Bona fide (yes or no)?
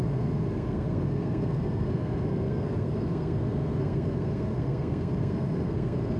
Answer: no